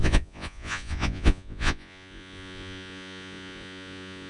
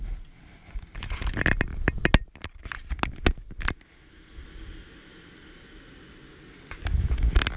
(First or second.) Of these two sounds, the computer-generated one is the first